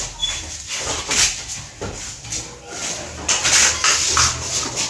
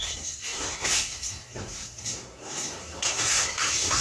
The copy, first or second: second